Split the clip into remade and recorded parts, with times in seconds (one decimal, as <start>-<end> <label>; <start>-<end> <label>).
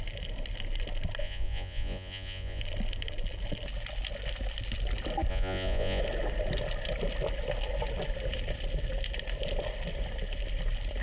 0.0-1.2 recorded; 1.2-2.6 remade; 2.6-5.3 recorded; 5.3-6.0 remade; 6.0-11.0 recorded